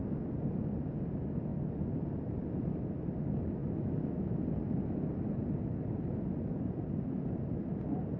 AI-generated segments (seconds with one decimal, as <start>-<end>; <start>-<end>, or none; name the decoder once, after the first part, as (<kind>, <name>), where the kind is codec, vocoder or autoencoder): 3.6-4.3 (autoencoder, DAC-VAE)